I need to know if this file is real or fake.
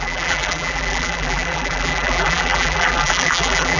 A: fake